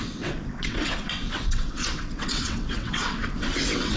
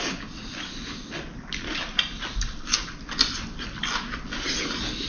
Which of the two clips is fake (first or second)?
first